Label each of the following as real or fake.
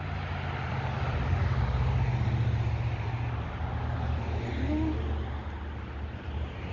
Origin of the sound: real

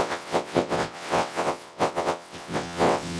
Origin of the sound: fake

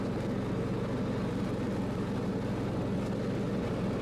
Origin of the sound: real